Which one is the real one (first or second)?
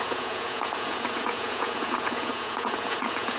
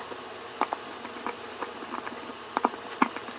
second